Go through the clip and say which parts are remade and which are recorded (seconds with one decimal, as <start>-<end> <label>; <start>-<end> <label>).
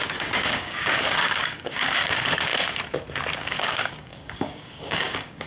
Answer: 0.0-2.5 remade; 2.5-3.4 recorded; 3.4-5.5 remade